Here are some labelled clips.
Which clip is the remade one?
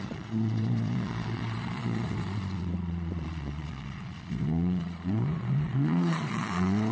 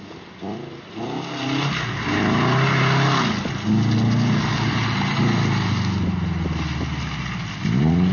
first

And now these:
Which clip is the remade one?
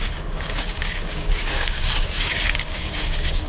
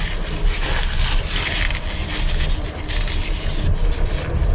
first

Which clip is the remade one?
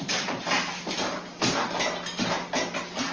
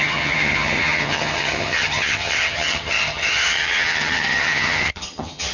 second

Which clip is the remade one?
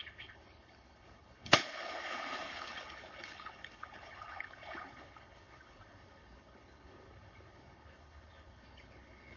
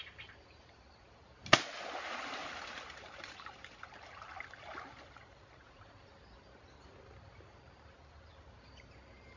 first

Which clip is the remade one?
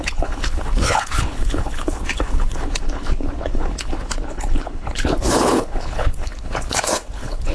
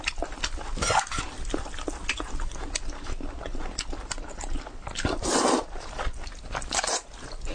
first